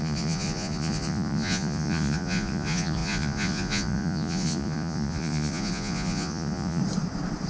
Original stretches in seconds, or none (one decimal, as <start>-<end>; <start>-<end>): 6.8-7.5